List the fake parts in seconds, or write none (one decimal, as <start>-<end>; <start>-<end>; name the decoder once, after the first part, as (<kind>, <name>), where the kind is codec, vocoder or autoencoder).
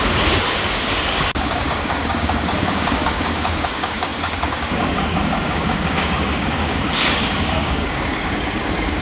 0.0-9.0 (codec, DAC)